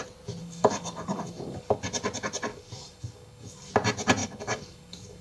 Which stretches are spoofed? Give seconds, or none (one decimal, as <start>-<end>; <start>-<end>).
0.4-1.8; 2.5-3.7; 4.2-5.2